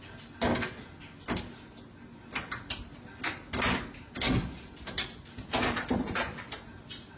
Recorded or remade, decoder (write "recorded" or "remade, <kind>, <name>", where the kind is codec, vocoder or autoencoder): recorded